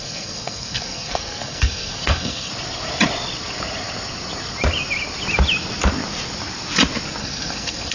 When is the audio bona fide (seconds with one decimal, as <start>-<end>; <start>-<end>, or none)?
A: 2.5-7.2